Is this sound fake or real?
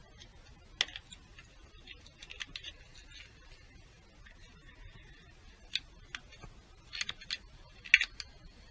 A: real